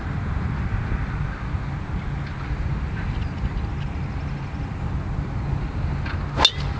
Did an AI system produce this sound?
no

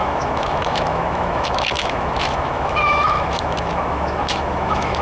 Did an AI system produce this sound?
yes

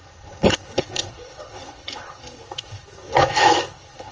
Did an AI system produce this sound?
yes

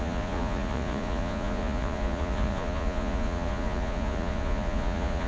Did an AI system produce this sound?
yes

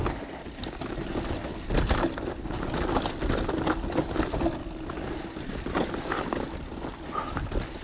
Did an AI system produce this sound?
no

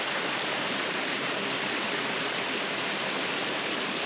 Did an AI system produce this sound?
yes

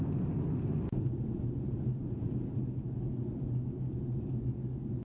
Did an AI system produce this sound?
no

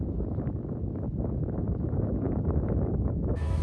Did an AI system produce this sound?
yes